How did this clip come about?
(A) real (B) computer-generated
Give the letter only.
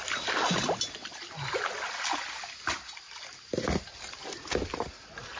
A